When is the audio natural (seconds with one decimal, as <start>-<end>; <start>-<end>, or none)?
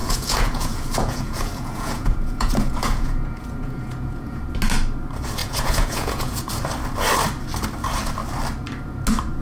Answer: 4.4-5.4; 6.5-9.4